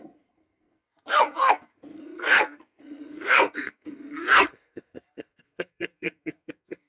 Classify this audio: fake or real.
fake